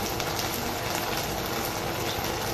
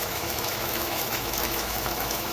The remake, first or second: second